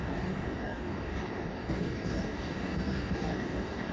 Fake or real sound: fake